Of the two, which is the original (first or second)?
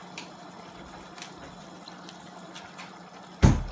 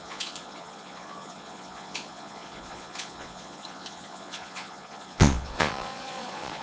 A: first